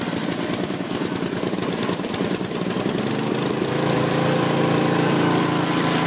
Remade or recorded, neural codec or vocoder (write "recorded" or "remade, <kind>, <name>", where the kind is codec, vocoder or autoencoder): remade, vocoder, BigVGAN v2